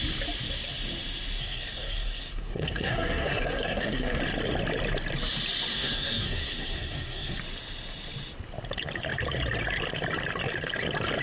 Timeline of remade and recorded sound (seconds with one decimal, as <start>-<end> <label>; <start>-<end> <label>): 0.0-1.4 recorded; 1.4-4.2 remade; 4.2-5.7 recorded; 5.7-7.4 remade; 7.4-11.2 recorded